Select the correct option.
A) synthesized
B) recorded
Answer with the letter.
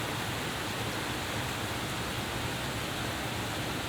B